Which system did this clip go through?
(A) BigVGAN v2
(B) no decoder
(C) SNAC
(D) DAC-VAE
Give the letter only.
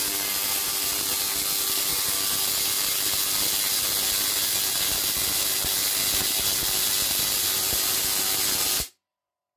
B